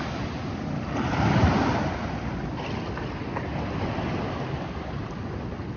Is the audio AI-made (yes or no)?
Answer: no